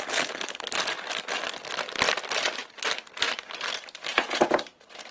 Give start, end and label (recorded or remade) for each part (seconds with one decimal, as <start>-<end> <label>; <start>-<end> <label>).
0.0-4.1 recorded; 4.1-4.6 remade; 4.6-5.1 recorded